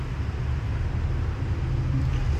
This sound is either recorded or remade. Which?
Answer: recorded